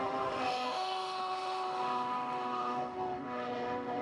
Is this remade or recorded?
remade